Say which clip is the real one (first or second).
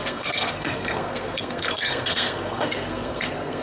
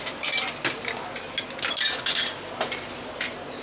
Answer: second